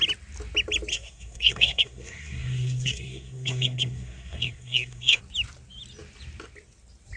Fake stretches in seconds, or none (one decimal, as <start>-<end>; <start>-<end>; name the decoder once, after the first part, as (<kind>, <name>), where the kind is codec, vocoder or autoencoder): 0.9-5.2 (codec, SNAC)